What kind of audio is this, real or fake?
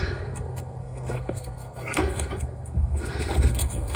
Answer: fake